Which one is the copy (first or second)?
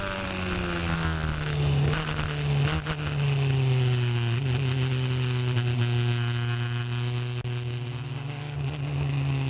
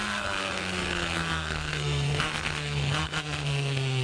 second